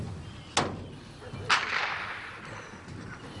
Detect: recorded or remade recorded